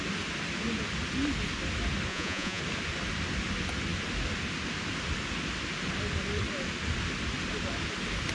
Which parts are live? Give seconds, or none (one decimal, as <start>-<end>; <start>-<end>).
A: 0.0-2.1; 2.6-8.3